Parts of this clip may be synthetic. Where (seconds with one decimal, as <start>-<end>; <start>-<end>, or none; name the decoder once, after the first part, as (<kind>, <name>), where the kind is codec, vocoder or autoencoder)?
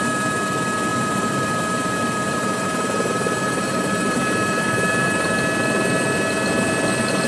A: 0.9-5.3 (vocoder, BigVGAN v2)